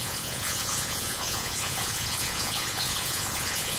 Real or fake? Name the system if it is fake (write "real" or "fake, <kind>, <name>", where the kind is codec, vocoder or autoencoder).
fake, vocoder, Vocos